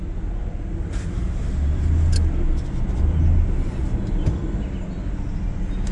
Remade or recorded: recorded